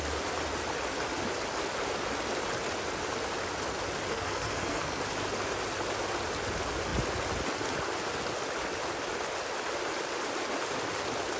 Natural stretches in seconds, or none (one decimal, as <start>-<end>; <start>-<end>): 0.0-4.1; 5.0-11.4